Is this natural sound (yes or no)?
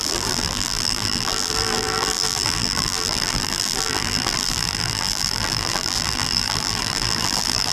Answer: no